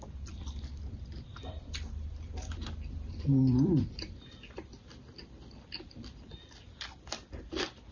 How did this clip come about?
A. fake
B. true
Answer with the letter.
A